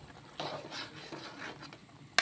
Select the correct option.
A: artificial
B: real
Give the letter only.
B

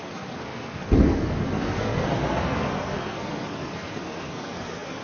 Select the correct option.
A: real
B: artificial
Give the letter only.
B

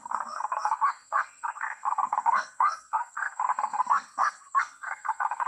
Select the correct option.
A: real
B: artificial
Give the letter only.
B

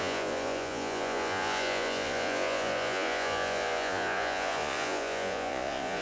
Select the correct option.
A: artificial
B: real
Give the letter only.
A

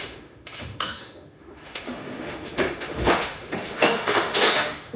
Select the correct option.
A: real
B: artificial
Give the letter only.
B